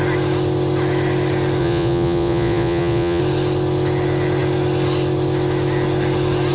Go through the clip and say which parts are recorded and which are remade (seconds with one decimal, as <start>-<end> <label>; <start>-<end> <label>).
0.0-1.6 recorded; 1.6-3.2 remade; 3.2-6.5 recorded